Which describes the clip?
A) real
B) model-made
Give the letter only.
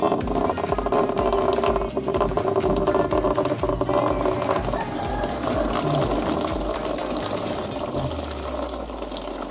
A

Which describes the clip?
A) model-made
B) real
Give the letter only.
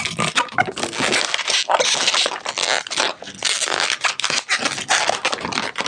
B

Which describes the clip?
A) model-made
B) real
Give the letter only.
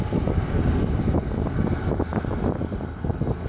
B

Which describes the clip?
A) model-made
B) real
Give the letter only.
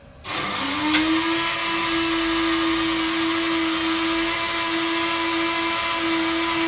B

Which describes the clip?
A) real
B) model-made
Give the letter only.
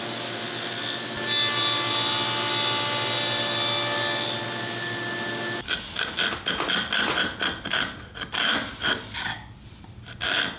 A